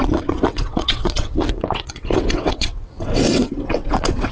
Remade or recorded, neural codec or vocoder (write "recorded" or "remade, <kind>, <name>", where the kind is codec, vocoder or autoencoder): remade, vocoder, WaveNeXt